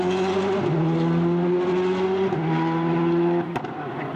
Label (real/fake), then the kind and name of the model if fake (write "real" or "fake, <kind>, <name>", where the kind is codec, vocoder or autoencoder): real